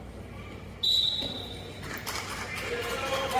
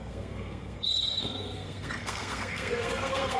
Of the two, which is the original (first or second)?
first